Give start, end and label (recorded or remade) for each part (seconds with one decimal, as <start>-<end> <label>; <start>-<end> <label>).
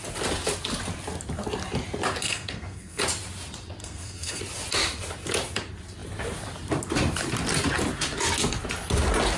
0.0-2.2 recorded; 2.2-3.0 remade; 3.0-3.8 recorded; 3.8-4.4 remade; 4.4-9.4 recorded